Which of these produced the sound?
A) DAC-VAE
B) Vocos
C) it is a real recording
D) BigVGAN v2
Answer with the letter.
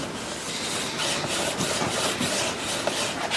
C